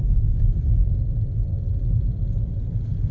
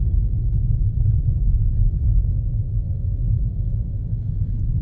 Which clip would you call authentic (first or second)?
first